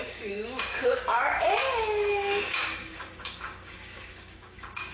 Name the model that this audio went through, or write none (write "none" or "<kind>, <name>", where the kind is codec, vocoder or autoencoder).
codec, DAC